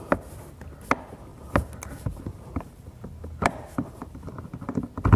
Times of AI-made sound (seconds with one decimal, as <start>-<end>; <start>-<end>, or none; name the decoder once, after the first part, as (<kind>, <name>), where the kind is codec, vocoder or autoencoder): 1.3-4.4 (vocoder, BigVGAN v2)